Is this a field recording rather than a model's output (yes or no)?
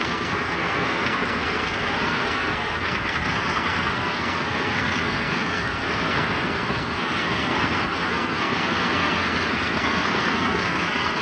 no